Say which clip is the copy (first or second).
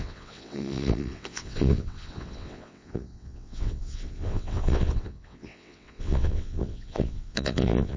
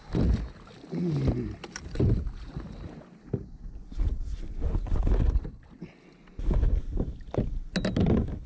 first